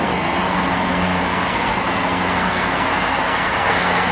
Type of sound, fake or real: fake